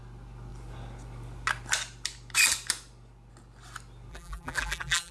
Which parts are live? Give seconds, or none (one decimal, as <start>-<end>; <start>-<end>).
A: 0.0-4.1